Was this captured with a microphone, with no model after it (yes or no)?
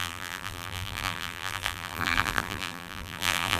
no